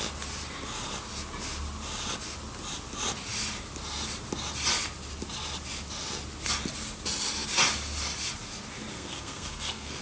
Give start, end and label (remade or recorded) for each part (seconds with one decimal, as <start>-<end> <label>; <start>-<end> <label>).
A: 0.0-8.9 recorded; 8.9-10.0 remade